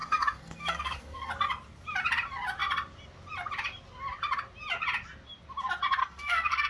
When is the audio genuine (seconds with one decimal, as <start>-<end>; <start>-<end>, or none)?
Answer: 1.3-6.0